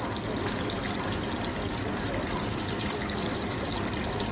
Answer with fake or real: fake